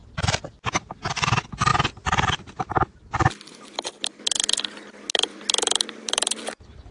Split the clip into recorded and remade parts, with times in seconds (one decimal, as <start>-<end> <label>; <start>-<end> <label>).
0.0-6.9 recorded

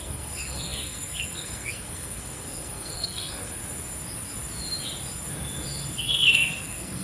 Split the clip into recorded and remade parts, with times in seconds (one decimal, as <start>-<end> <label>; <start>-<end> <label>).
0.0-3.6 remade; 3.6-6.0 recorded; 6.0-7.0 remade

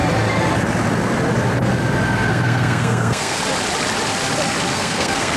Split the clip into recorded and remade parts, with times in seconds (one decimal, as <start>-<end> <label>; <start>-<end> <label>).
0.0-2.3 recorded; 2.3-3.4 remade; 3.4-4.7 recorded; 4.7-5.4 remade

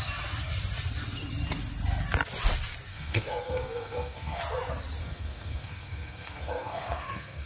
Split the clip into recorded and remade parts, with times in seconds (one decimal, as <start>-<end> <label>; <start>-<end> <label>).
0.0-2.9 recorded; 2.9-4.4 remade; 4.4-5.0 recorded; 5.0-7.5 remade

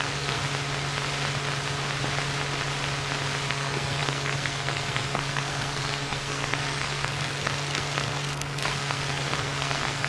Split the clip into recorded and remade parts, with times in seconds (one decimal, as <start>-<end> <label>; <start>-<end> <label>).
0.0-0.4 remade; 0.4-3.5 recorded; 3.5-10.1 remade